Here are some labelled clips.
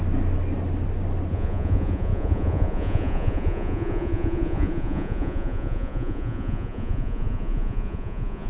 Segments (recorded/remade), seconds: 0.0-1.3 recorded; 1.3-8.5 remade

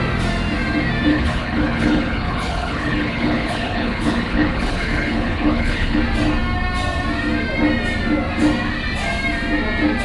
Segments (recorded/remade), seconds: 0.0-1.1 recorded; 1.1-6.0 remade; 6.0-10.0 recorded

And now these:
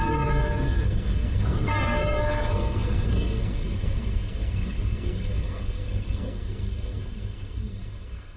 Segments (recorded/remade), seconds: 0.0-8.4 remade

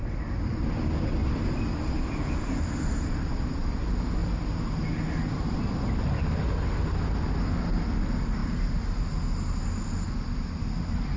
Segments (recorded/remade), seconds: 0.0-11.2 recorded

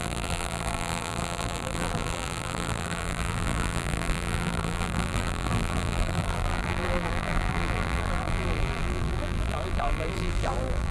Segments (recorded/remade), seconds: 0.0-10.9 remade